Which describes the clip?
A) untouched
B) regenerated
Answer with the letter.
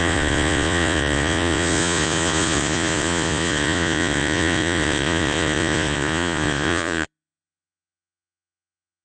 B